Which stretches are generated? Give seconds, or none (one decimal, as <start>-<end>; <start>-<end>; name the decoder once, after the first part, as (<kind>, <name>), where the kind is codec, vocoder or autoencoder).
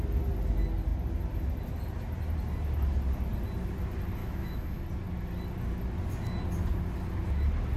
4.2-4.8 (autoencoder, DAC-VAE)